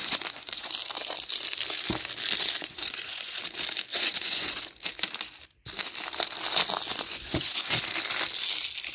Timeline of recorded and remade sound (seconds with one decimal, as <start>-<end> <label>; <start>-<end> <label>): 0.0-0.7 remade; 0.7-2.6 recorded; 2.6-3.4 remade; 3.4-3.9 recorded; 3.9-4.6 remade; 4.6-6.9 recorded; 6.9-7.8 remade; 7.8-8.9 recorded